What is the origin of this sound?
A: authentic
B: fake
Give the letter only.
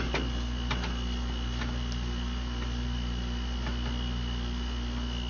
A